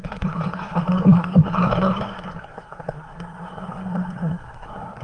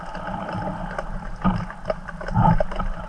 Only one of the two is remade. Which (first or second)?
first